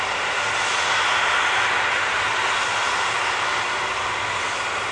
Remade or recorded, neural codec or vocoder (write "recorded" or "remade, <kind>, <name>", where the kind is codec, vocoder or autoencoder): recorded